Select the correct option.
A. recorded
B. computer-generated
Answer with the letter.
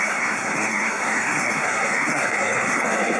B